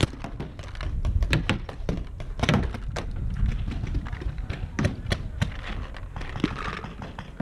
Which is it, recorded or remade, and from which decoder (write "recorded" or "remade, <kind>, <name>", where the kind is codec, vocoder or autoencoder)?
recorded